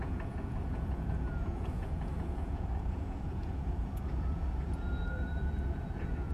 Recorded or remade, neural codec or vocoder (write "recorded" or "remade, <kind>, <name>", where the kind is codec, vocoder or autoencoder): remade, vocoder, Vocos